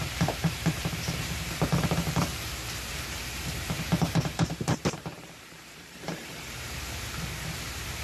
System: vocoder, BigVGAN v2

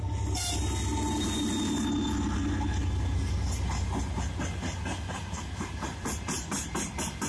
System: none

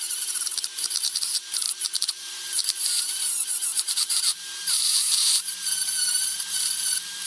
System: vocoder, BigVGAN v2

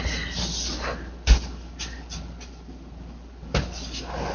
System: none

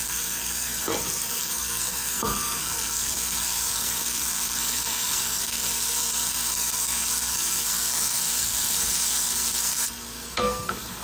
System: codec, SNAC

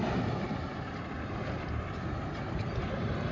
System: vocoder, BigVGAN v2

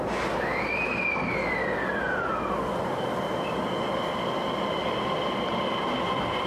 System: none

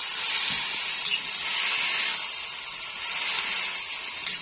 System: none